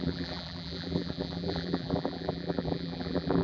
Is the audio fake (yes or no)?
yes